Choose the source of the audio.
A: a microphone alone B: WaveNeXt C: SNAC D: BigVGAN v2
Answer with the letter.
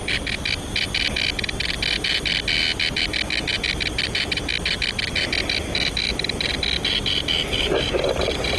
A